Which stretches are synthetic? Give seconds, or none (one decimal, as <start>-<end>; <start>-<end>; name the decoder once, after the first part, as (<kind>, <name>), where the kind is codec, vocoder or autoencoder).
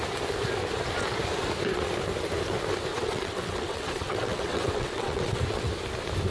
2.9-5.7 (vocoder, WaveNeXt)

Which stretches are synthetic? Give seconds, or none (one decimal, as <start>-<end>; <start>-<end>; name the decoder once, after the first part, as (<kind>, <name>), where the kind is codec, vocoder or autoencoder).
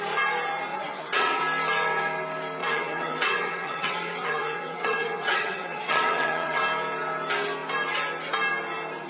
0.7-1.4 (vocoder, WaveNeXt); 2.6-6.6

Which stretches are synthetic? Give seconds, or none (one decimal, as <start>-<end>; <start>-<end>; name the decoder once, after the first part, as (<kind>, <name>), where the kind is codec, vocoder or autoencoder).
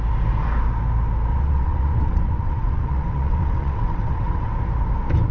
1.3-4.5 (vocoder, WaveNeXt)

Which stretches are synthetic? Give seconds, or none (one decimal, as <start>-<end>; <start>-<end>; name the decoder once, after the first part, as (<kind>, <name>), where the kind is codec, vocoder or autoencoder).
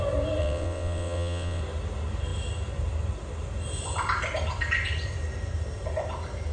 0.4-1.6 (vocoder, WaveNeXt)